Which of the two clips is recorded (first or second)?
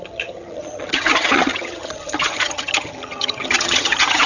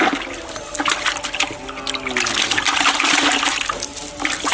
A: second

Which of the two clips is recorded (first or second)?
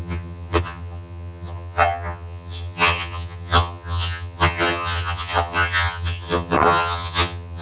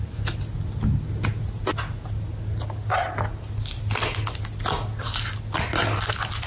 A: second